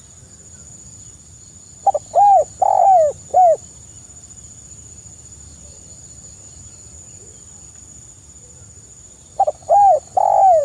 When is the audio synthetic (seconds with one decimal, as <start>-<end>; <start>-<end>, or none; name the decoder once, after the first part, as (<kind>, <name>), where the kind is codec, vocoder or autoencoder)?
none